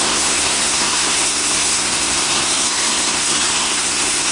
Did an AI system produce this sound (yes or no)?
yes